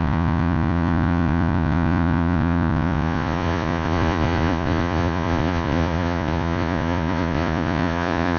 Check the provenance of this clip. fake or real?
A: fake